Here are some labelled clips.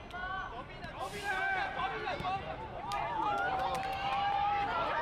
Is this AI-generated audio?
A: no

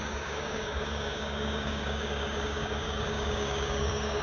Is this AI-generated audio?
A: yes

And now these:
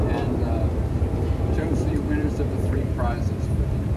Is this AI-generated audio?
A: yes